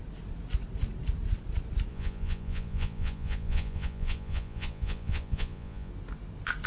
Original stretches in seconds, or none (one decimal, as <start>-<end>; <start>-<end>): 0.0-1.9; 5.9-6.7